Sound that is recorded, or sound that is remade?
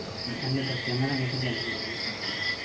recorded